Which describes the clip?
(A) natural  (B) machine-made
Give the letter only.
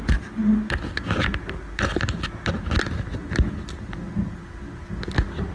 A